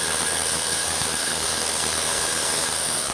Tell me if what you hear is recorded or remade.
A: remade